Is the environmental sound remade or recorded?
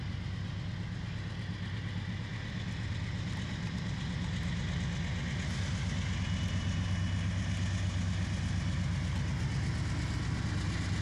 recorded